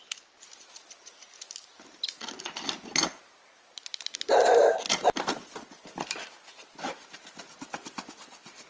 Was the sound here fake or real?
real